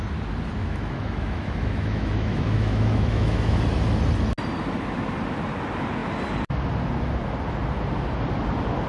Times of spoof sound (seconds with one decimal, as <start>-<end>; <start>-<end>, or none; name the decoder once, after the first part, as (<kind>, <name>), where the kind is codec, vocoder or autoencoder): 0.6-3.6 (autoencoder, DAC-VAE)